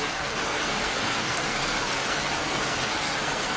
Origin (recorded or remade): remade